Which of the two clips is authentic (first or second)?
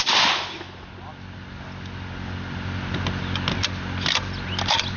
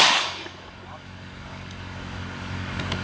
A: first